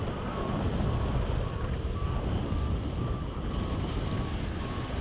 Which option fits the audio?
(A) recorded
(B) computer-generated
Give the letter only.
B